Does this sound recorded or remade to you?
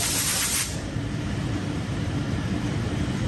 remade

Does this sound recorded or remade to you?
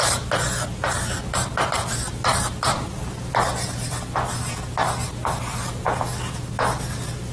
recorded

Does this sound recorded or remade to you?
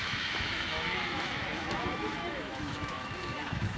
remade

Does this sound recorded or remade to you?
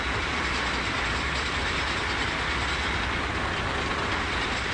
recorded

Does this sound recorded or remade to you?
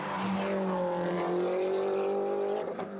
recorded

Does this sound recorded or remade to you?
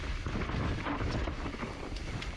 recorded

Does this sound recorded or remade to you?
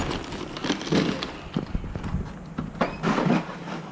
recorded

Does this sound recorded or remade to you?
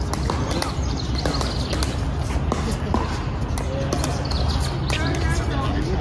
recorded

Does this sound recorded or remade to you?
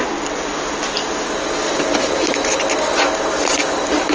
recorded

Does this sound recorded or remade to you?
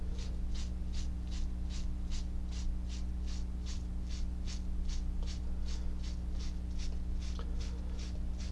recorded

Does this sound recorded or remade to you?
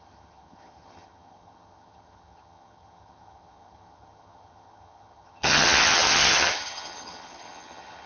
remade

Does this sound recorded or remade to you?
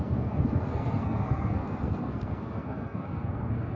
remade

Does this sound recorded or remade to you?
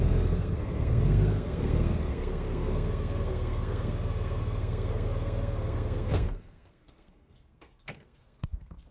remade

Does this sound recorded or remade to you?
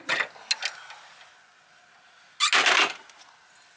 recorded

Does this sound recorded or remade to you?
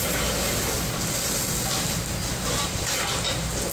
recorded